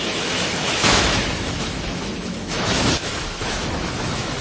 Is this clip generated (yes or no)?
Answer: yes